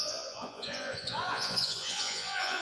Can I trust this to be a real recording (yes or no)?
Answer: no